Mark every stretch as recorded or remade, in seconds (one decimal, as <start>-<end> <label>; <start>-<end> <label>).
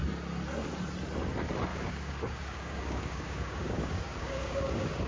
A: 0.0-1.7 recorded; 1.7-5.1 remade